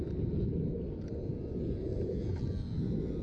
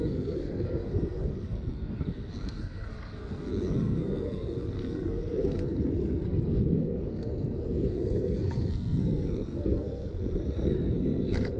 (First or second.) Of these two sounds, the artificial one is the second